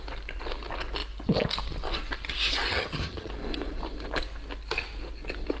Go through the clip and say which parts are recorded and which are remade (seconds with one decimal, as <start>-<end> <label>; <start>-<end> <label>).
0.0-2.7 recorded; 2.7-3.3 remade; 3.3-5.6 recorded